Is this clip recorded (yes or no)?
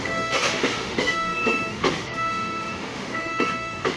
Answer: no